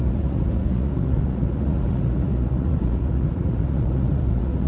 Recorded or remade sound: remade